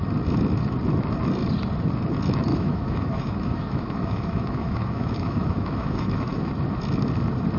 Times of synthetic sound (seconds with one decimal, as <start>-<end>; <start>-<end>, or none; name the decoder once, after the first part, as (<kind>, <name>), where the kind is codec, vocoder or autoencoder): 2.5-6.5 (autoencoder, DAC-VAE)